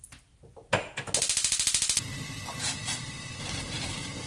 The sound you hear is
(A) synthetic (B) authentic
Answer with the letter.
B